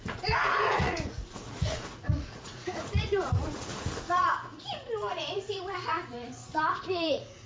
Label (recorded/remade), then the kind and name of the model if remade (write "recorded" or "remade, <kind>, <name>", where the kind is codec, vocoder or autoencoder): remade, vocoder, Vocos